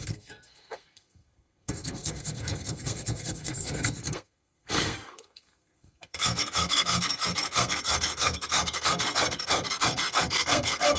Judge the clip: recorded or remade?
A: remade